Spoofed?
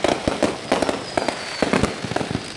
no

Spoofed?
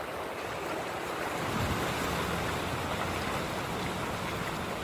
no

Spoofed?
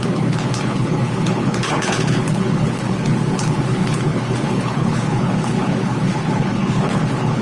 yes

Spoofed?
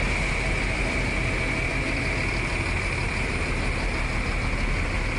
no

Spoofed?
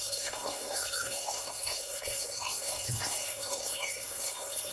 yes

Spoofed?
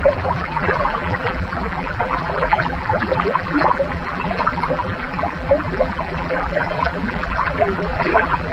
yes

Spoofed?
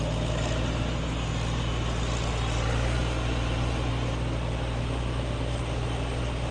no